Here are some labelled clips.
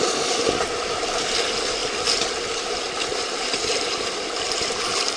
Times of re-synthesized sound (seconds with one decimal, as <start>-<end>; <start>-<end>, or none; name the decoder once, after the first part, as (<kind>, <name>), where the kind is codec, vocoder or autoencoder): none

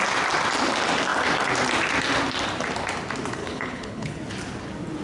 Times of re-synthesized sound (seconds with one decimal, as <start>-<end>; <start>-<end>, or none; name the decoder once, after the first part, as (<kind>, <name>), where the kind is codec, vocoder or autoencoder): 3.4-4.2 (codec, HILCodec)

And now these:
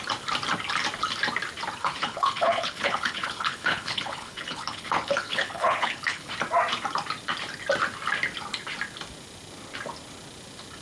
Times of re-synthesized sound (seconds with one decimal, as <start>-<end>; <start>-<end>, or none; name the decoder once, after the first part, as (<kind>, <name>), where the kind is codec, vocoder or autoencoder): 1.8-6.3 (codec, HILCodec)